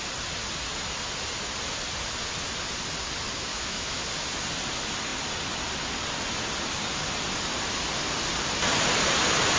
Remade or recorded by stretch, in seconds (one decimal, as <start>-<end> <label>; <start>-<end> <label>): 0.0-3.5 recorded; 3.5-4.0 remade; 4.0-9.6 recorded